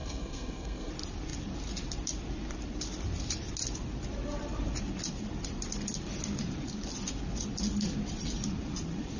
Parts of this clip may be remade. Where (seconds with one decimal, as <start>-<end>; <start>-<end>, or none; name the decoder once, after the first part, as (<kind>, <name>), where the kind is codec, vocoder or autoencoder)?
0.0-0.9 (codec, SNAC)